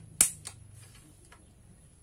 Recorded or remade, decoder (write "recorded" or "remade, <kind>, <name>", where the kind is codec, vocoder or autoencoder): recorded